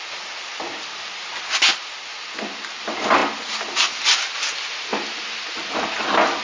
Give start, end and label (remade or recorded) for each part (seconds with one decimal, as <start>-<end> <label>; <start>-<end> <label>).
0.0-6.4 recorded